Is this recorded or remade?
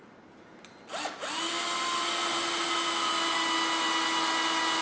recorded